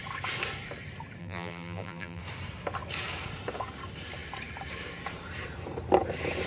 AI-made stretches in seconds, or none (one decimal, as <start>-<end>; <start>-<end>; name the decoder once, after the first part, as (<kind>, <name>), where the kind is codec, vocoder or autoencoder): 1.2-2.2 (vocoder, BigVGAN v2)